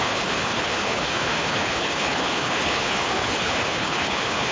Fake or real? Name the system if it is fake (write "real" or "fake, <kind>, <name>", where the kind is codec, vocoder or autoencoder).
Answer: fake, codec, HILCodec